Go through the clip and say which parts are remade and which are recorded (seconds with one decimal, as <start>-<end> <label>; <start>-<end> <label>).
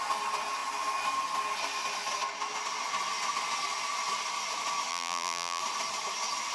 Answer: 0.0-4.9 recorded; 4.9-5.6 remade; 5.6-6.5 recorded